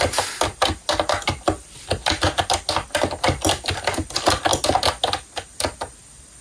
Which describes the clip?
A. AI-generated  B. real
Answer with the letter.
B